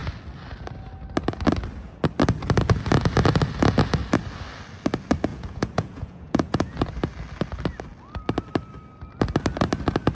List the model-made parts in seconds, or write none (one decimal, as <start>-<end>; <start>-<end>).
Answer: 5.3-6.9